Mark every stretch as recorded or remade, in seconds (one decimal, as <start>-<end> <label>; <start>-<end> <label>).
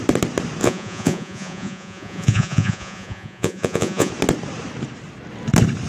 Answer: 0.0-0.6 recorded; 0.6-4.1 remade; 4.1-5.9 recorded